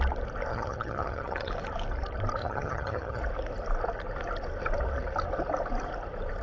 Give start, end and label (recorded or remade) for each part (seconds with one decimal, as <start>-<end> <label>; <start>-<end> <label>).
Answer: 0.0-0.5 recorded; 0.5-1.5 remade; 1.5-2.4 recorded; 2.4-3.2 remade; 3.2-6.4 recorded